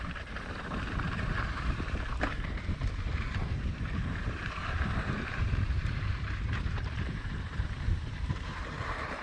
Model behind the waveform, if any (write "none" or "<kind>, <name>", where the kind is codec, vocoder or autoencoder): vocoder, BigVGAN v2